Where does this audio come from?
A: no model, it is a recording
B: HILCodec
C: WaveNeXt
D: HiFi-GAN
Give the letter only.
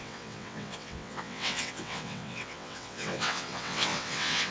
C